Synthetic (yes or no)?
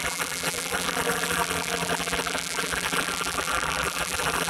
yes